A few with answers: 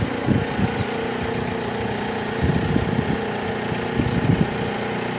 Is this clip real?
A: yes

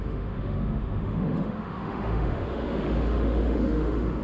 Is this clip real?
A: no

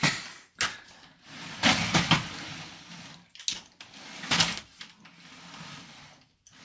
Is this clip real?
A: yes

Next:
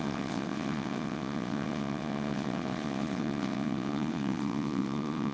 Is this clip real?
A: no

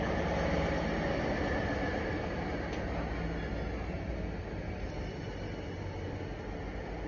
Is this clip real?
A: yes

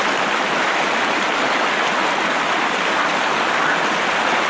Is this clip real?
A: yes